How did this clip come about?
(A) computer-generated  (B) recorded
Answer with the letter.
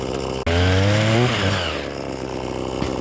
B